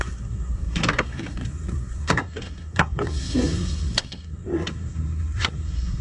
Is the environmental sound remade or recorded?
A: remade